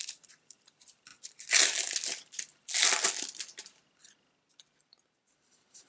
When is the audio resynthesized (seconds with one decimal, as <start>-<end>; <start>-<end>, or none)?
0.0-1.1; 4.6-5.9